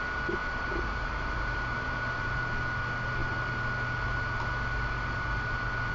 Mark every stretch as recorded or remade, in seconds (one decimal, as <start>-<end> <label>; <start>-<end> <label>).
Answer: 0.0-0.4 recorded; 0.4-2.4 remade; 2.4-5.9 recorded